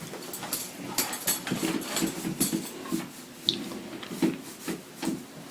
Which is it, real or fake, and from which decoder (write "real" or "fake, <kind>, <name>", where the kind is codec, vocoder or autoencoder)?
real